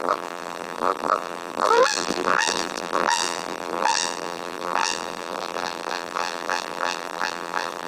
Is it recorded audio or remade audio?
remade